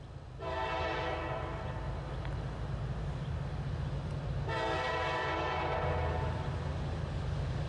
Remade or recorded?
recorded